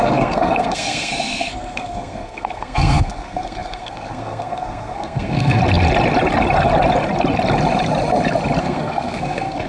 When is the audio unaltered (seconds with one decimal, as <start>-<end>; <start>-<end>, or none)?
5.6-8.6

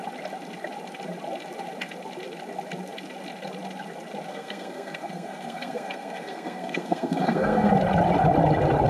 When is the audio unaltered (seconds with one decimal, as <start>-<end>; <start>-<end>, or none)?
0.0-4.3; 7.7-8.9

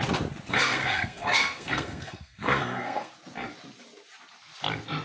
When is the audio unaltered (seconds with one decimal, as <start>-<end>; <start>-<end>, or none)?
0.0-0.5; 3.1-5.0